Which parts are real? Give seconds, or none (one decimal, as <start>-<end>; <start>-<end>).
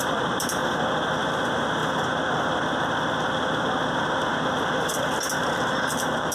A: 0.6-1.2; 1.8-5.6